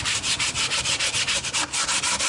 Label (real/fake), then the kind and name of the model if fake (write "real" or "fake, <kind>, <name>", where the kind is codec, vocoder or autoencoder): real